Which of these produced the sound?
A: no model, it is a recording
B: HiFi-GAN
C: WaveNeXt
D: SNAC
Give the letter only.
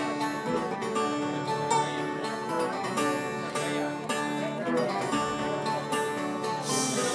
A